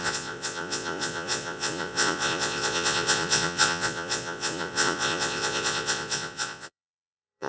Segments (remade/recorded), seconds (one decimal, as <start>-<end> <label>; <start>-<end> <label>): 0.0-7.5 remade